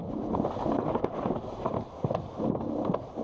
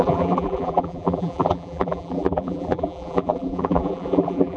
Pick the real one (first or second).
first